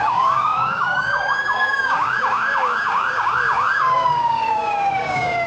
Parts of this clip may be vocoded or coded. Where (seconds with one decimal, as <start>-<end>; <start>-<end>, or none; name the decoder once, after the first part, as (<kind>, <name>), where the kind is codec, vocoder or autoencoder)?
0.0-5.5 (codec, DAC)